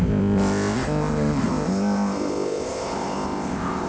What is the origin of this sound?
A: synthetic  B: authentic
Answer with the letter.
A